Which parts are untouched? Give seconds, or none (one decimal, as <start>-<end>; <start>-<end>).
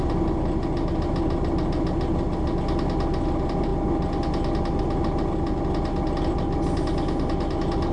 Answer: 0.0-7.9